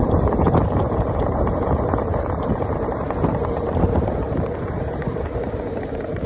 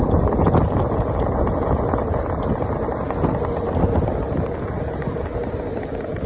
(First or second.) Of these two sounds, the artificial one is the first